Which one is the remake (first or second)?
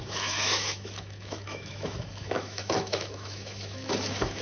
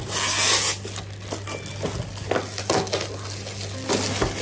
first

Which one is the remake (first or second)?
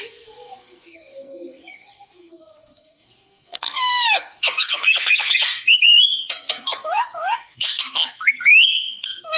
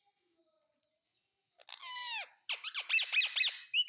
first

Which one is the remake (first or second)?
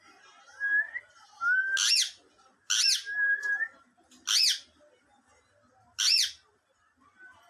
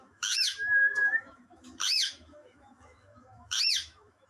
second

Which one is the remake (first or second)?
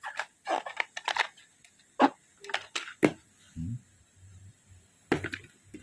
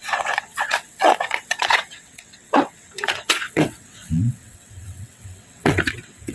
second